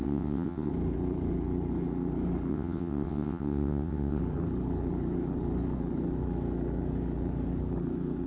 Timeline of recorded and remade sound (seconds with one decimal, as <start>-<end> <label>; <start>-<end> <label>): 0.0-0.7 remade; 0.7-2.5 recorded; 2.5-4.2 remade; 4.2-8.3 recorded